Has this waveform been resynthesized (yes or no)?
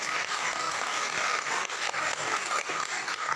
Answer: yes